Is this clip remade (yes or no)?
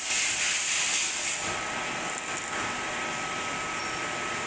no